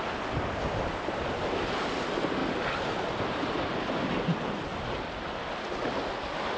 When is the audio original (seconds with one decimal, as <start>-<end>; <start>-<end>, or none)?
0.0-6.6